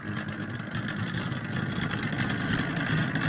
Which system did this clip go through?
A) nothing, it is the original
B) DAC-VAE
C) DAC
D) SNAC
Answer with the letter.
A